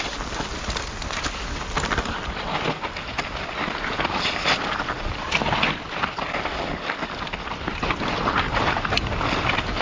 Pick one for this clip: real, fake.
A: real